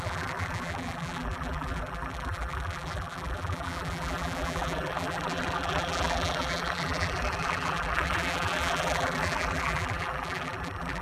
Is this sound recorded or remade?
remade